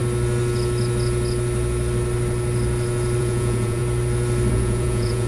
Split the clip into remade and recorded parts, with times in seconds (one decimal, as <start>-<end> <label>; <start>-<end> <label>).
0.0-3.2 recorded; 3.2-3.8 remade; 3.8-4.5 recorded; 4.5-5.3 remade